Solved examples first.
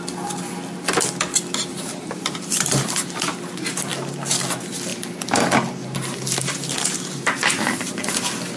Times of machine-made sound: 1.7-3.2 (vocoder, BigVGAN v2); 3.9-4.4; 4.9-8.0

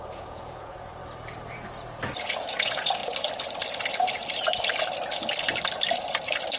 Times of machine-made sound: 0.0-1.0 (vocoder, Vocos); 2.2-3.0

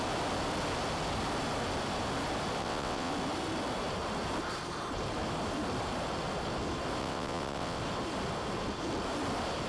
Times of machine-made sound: 2.6-3.1 (vocoder, WaveNeXt); 7.0-7.8

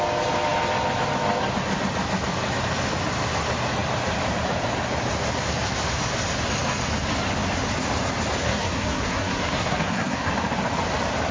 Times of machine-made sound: 8.4-10.3 (codec, SNAC)

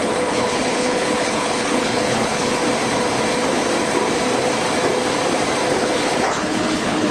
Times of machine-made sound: 0.0-2.6 (codec, HILCodec); 5.7-7.1

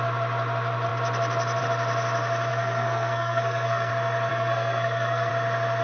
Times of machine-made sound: 2.5-3.9 (codec, SNAC); 4.3-5.3